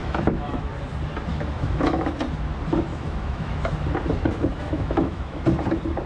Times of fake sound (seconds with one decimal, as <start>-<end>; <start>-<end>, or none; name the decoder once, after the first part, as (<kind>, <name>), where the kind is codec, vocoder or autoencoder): 0.0-0.7 (autoencoder, DAC-VAE); 1.3-2.1; 2.9-3.7; 4.5-5.4